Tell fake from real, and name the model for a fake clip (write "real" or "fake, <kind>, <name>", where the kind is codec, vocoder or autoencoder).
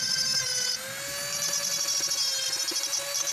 real